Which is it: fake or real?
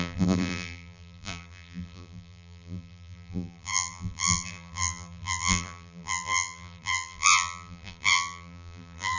fake